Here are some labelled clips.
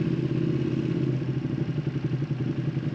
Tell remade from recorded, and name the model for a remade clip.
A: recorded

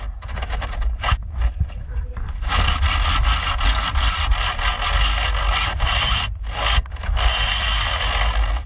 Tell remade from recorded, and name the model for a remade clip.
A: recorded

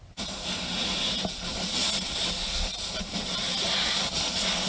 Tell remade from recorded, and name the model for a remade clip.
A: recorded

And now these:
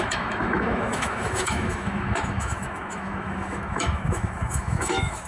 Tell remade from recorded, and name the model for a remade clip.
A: remade, autoencoder, DAC-VAE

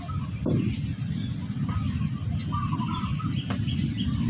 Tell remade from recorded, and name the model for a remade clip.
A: recorded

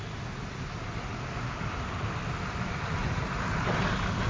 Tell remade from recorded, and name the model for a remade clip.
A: recorded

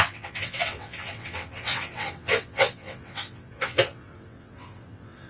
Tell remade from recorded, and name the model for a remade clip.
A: remade, vocoder, WaveNeXt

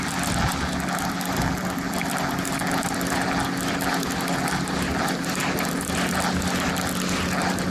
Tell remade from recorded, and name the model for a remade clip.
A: recorded